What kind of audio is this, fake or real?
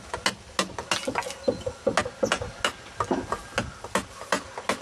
real